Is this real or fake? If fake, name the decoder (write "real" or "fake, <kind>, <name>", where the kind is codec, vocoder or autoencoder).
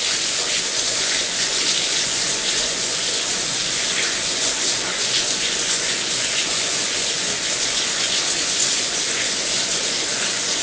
fake, vocoder, Vocos